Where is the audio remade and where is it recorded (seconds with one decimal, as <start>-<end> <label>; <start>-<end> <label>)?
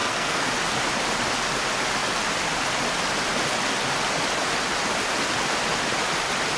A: 0.0-0.5 remade; 0.5-6.6 recorded